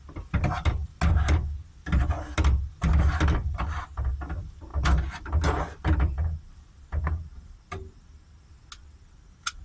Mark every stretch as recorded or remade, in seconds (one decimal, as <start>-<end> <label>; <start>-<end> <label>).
0.0-9.6 recorded